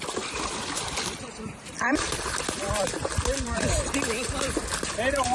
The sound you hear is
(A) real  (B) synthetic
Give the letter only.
B